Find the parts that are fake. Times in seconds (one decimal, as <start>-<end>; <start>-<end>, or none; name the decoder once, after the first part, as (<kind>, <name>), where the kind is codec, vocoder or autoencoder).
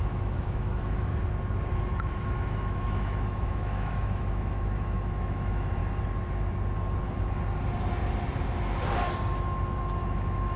0.0-1.1 (autoencoder, DAC-VAE); 1.9-5.8; 9.8-10.6